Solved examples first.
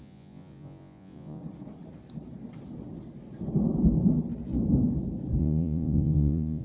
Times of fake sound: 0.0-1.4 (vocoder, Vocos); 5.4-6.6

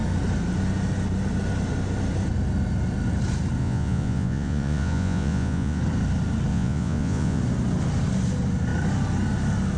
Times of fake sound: 3.6-5.8 (vocoder, Vocos); 6.5-7.4

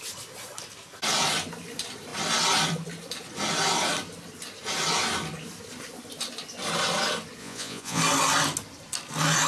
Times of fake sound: 7.4-8.0 (vocoder, Vocos)

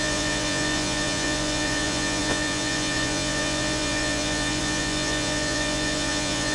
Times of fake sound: 0.0-6.5 (vocoder, Vocos)